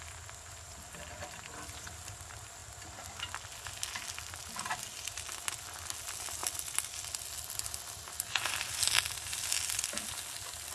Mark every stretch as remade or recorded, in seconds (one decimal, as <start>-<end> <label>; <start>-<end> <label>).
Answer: 0.0-10.7 recorded